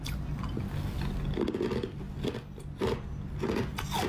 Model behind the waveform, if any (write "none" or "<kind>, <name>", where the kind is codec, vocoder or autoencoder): none